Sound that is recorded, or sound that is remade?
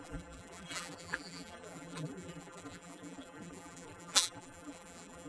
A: remade